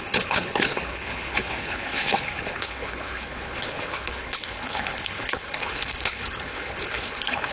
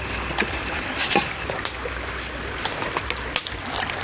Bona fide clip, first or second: second